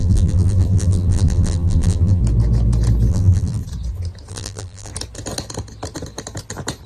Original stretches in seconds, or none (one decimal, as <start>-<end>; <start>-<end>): 2.2-3.1; 3.6-4.3; 4.9-6.9